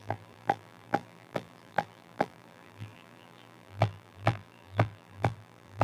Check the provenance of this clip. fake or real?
fake